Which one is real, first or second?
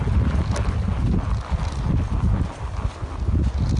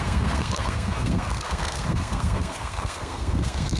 first